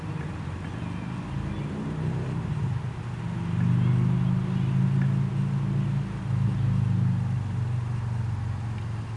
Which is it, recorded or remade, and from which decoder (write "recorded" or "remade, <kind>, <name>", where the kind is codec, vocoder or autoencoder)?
recorded